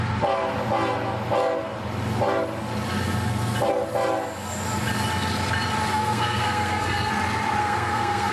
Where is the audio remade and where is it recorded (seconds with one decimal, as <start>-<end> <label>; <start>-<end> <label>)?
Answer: 0.0-5.9 recorded; 5.9-7.1 remade; 7.1-7.6 recorded; 7.6-8.3 remade